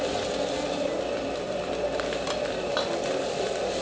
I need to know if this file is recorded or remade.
recorded